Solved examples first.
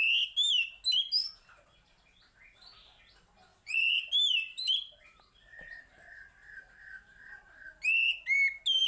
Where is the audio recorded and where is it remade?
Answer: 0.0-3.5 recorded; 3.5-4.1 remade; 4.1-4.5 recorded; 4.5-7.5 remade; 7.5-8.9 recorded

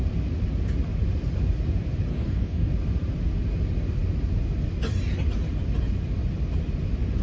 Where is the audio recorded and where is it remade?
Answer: 0.0-2.1 recorded; 2.1-2.7 remade; 2.7-7.2 recorded

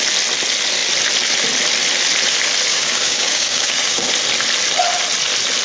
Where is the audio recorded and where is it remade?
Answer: 0.0-2.7 recorded; 2.7-4.1 remade; 4.1-5.6 recorded

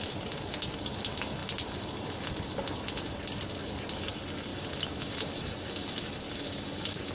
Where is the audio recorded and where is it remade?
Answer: 0.0-7.1 recorded